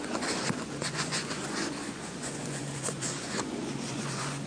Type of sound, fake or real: fake